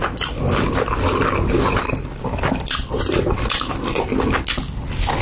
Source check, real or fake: real